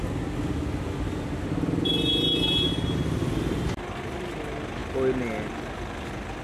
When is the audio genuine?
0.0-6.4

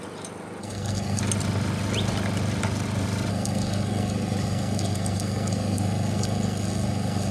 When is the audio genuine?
0.0-0.6; 1.2-3.3

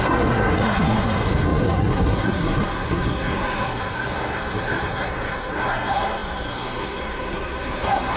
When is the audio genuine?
none

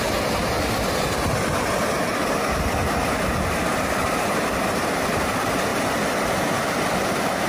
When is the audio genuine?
0.0-7.5